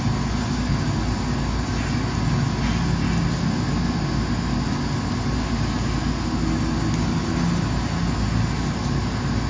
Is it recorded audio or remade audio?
recorded